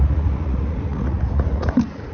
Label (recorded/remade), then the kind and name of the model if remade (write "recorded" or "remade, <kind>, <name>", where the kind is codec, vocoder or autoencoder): remade, vocoder, Vocos